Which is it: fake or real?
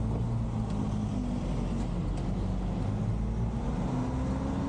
real